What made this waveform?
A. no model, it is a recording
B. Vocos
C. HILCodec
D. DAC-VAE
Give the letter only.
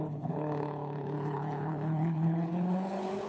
C